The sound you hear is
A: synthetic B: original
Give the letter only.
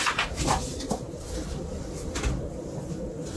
B